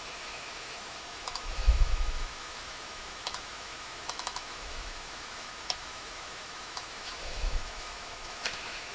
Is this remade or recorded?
remade